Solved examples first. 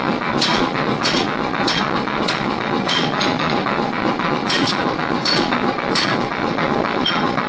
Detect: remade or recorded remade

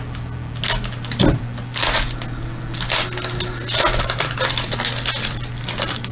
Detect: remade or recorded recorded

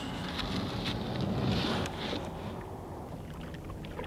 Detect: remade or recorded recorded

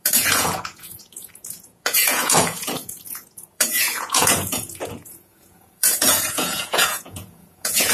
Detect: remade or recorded remade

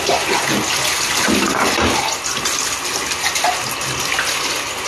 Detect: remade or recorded recorded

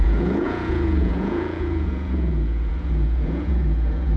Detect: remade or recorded remade